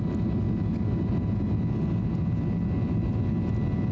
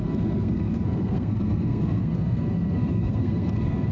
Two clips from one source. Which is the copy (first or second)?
second